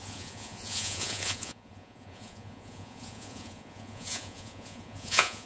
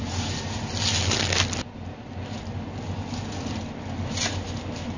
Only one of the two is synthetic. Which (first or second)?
first